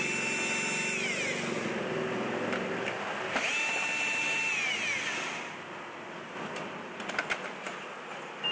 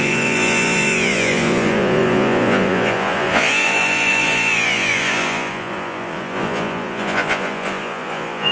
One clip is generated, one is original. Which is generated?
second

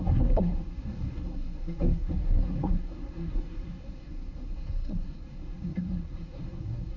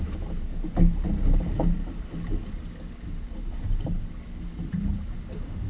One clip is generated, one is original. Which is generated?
first